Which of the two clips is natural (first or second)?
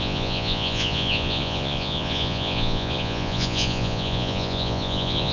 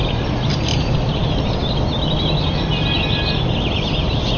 second